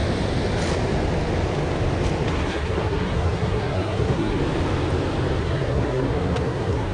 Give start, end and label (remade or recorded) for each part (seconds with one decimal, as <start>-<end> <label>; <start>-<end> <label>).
0.0-2.3 recorded; 2.3-4.4 remade; 4.4-5.4 recorded; 5.4-6.9 remade